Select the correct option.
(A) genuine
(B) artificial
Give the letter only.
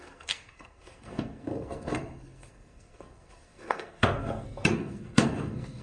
B